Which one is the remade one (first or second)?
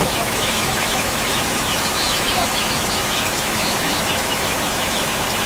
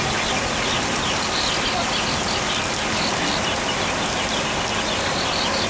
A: first